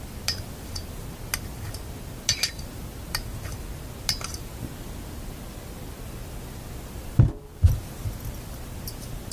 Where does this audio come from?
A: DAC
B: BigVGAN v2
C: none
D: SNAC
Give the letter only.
C